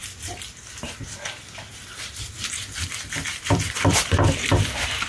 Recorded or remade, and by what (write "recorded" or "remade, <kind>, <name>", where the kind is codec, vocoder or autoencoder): remade, vocoder, BigVGAN v2